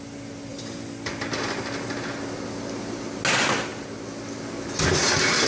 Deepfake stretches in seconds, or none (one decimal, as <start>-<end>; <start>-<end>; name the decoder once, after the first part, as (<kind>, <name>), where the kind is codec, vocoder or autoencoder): none

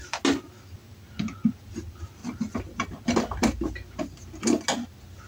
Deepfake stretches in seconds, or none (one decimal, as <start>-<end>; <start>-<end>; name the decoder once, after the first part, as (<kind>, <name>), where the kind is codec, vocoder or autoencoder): none

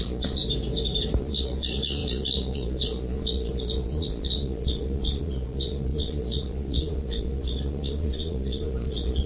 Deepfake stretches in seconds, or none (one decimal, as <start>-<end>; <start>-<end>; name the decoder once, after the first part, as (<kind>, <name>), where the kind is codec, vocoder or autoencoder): 0.0-0.4 (vocoder, Vocos); 1.2-9.3

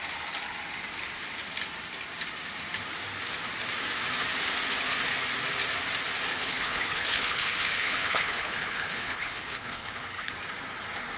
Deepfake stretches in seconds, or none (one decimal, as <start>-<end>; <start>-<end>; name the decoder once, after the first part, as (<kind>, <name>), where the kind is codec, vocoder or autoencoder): 6.3-10.3 (codec, HILCodec)

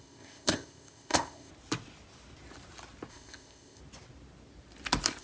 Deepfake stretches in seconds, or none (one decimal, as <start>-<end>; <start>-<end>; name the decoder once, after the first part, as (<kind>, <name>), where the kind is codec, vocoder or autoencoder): 0.0-1.5 (codec, ZipCodec); 3.1-3.8

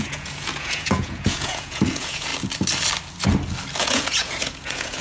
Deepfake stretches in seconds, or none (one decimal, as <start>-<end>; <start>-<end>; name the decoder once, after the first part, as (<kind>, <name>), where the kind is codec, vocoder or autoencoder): 0.0-2.3 (vocoder, Vocos); 3.8-5.0

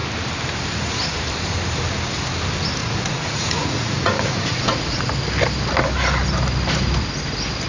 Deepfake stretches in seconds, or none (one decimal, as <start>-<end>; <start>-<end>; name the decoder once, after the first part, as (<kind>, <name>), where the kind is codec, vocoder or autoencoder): 2.8-5.0 (vocoder, Vocos)